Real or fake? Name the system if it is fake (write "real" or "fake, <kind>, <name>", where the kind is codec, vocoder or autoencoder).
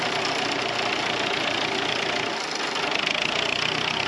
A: real